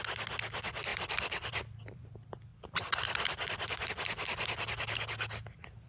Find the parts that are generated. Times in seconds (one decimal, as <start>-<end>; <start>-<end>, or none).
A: 0.9-2.1; 2.5-3.9

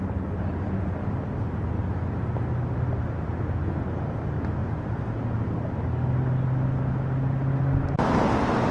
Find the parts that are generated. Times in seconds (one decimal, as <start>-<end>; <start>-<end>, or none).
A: none

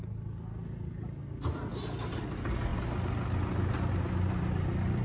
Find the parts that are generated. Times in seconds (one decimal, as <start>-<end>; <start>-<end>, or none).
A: none